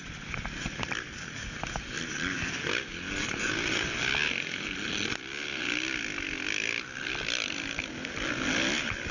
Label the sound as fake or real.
real